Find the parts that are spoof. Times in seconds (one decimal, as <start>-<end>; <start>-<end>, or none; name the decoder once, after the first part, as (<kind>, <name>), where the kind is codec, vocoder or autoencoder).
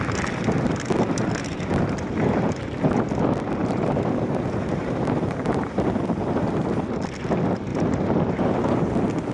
1.5-2.2 (vocoder, BigVGAN v2); 3.6-6.8; 7.7-8.9